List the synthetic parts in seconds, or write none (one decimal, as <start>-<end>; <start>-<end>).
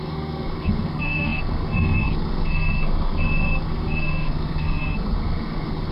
0.0-5.9